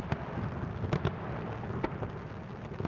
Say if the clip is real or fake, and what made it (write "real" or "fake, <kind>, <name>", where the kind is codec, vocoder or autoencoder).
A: real